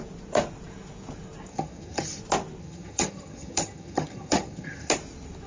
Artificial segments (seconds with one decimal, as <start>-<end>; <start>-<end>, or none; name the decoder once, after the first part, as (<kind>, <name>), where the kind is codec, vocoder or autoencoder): 1.5-2.2 (vocoder, HiFi-GAN); 2.6-4.9